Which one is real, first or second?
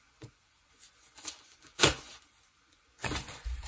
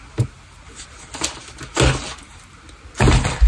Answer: second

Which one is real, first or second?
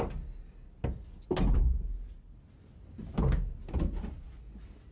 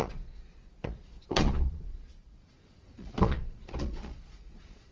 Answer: first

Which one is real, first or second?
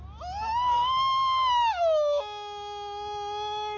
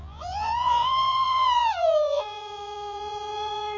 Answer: first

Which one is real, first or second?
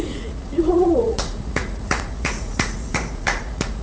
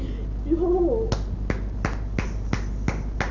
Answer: second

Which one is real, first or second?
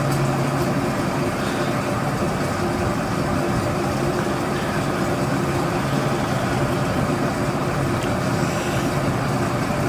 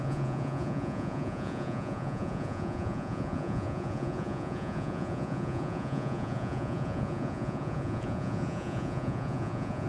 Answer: first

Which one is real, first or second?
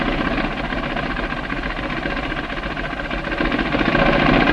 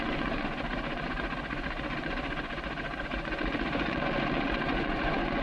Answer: first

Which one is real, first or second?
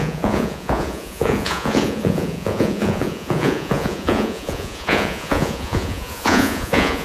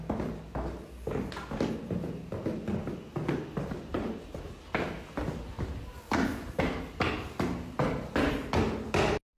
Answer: second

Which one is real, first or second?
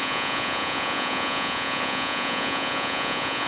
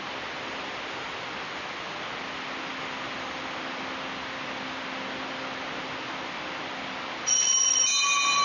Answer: second